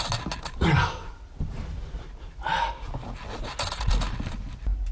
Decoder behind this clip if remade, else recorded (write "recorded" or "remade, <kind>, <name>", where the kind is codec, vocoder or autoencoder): recorded